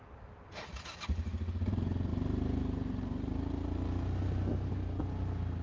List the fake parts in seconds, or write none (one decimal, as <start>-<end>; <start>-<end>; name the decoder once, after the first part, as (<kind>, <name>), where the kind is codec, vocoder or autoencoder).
none